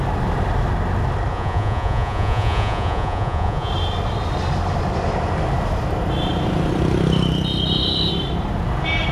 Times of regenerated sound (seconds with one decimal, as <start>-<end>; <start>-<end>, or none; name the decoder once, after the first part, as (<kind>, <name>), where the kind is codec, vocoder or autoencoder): 1.3-3.7 (vocoder, Vocos)